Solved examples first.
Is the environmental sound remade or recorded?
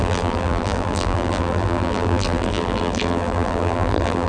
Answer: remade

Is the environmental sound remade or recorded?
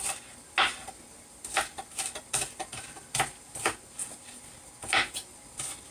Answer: recorded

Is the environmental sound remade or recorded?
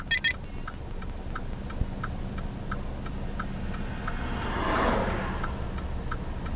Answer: recorded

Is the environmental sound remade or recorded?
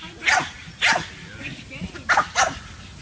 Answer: recorded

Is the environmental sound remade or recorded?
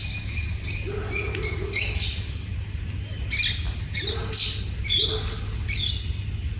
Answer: recorded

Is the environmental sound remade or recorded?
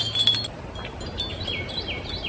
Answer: recorded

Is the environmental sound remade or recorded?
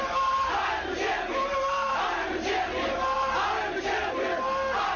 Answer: recorded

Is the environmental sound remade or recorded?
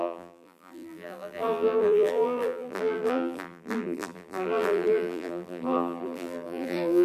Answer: remade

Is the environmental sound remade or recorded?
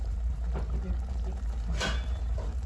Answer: remade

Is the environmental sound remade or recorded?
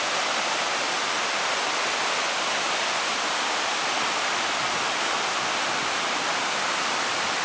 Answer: remade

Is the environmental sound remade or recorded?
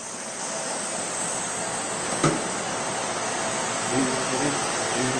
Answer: recorded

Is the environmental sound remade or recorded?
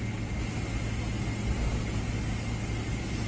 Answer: recorded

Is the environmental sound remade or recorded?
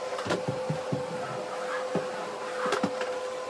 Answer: recorded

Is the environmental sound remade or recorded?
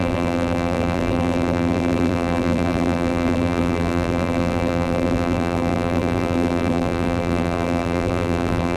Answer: remade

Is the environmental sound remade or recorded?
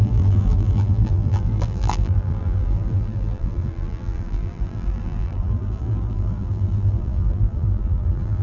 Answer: remade